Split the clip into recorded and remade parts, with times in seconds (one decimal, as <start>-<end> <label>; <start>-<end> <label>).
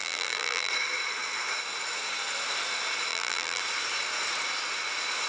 0.0-0.7 remade; 0.7-3.1 recorded; 3.1-3.6 remade; 3.6-5.3 recorded